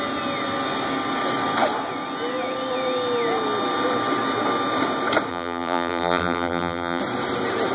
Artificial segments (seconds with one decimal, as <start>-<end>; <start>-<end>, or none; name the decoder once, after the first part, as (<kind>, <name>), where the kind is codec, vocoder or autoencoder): 5.3-7.0 (vocoder, BigVGAN v2)